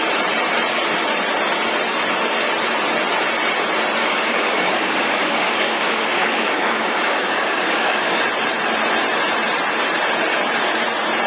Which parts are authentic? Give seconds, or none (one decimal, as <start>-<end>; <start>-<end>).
0.0-4.0; 8.2-11.3